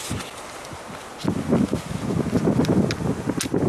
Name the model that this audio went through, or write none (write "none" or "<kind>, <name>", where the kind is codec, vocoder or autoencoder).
none